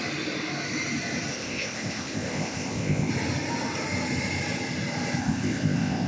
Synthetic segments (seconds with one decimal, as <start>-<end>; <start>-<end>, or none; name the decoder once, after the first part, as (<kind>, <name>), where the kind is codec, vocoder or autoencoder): 1.3-3.1 (codec, ZipCodec); 5.2-6.1